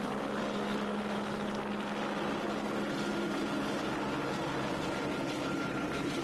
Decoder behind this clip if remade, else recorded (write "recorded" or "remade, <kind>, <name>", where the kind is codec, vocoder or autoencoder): recorded